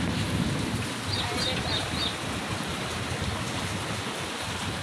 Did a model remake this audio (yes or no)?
no